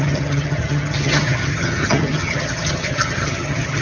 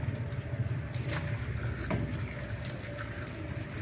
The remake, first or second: first